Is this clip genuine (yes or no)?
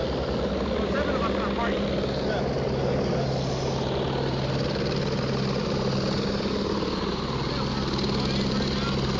yes